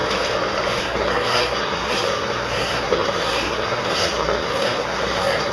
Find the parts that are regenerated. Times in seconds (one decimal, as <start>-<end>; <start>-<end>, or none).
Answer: 0.8-5.5